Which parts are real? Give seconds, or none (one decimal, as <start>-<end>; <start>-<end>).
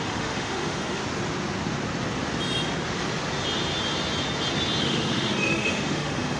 1.0-4.8